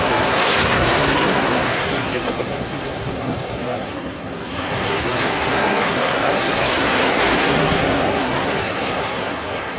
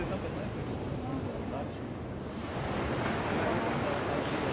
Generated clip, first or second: first